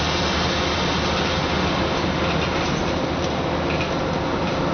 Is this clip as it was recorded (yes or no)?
yes